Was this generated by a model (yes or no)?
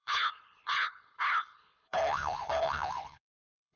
yes